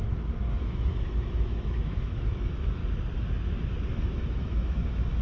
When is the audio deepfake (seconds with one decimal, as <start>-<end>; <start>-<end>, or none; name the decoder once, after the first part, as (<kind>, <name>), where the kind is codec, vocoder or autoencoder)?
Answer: 0.0-2.8 (autoencoder, DAC-VAE); 4.0-5.2